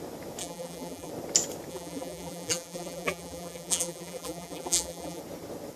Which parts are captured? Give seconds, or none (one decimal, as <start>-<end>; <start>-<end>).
0.0-0.4; 1.1-1.7; 5.2-5.8